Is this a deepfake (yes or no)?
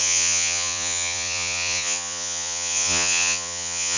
yes